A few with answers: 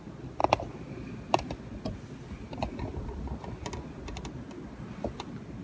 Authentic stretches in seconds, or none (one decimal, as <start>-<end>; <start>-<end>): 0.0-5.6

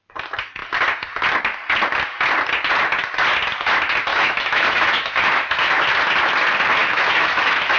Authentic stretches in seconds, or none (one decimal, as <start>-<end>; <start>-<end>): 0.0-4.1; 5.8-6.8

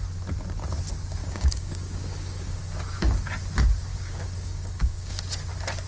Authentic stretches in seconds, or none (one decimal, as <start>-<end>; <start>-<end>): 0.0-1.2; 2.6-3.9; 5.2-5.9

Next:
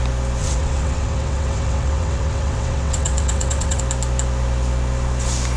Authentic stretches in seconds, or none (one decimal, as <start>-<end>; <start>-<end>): 0.0-0.4; 3.8-5.6

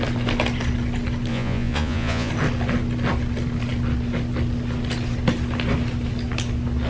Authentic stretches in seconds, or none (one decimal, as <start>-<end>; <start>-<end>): 0.0-1.3; 2.3-6.9

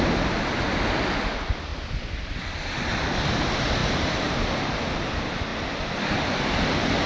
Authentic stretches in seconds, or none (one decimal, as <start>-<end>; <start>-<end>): 0.0-3.8; 4.8-7.1

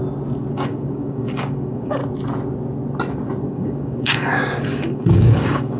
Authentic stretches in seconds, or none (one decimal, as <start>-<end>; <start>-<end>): 0.0-0.5; 2.0-3.5

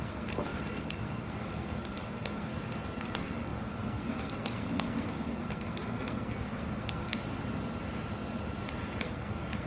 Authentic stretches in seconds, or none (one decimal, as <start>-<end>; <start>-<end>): 2.5-3.0; 7.2-9.0